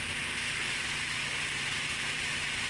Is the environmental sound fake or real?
real